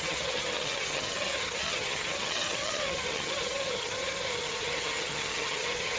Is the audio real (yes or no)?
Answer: no